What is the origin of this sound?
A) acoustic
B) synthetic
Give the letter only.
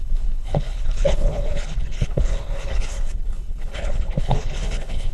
B